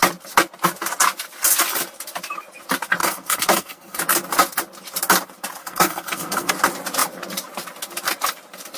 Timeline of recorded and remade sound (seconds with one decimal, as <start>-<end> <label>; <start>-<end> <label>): 0.0-3.0 recorded; 3.0-4.0 remade; 4.0-5.6 recorded; 5.6-6.5 remade; 6.5-8.8 recorded